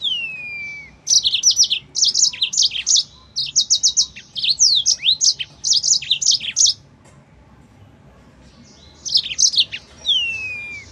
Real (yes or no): yes